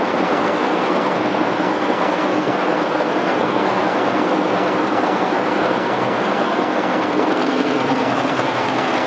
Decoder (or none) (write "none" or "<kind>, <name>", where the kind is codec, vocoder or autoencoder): codec, SNAC